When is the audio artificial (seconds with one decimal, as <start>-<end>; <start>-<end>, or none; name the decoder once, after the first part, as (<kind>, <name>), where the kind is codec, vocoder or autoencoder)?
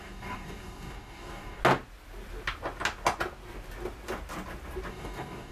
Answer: 0.0-1.6 (codec, DAC); 4.9-5.5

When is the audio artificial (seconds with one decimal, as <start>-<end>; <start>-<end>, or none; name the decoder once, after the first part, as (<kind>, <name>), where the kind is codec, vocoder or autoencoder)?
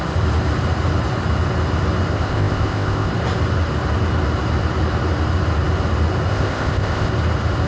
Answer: 2.1-3.1 (codec, ZipCodec); 6.3-7.1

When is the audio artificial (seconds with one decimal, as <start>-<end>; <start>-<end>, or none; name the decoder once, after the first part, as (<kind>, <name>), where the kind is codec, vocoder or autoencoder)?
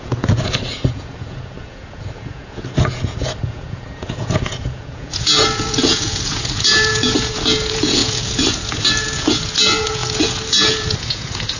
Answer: 0.0-11.6 (vocoder, Vocos)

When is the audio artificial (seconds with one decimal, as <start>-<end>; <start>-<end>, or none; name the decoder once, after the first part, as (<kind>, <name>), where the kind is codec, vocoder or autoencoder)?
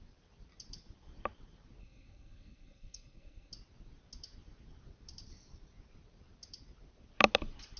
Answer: 1.8-3.5 (codec, SNAC)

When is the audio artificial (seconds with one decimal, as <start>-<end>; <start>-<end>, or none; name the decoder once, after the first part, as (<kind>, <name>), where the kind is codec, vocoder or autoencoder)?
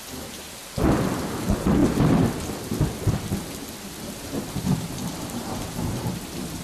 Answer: 0.0-0.6 (vocoder, BigVGAN v2); 1.4-1.8; 4.1-6.6